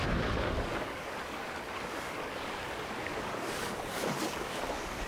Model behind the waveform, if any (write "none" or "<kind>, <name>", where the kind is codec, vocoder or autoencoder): codec, DAC